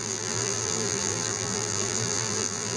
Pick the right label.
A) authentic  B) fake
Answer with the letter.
B